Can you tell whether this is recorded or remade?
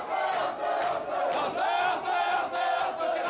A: recorded